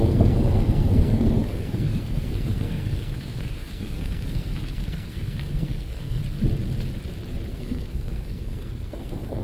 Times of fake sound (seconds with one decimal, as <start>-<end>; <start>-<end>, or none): 0.0-6.2; 7.5-9.4